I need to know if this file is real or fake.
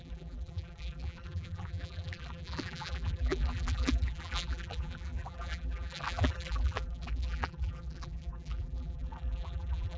fake